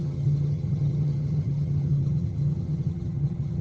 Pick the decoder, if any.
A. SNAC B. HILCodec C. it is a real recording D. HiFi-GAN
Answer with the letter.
D